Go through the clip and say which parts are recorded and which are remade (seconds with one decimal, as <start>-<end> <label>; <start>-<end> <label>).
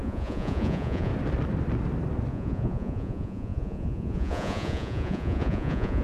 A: 0.0-1.1 remade; 1.1-2.3 recorded; 2.3-6.0 remade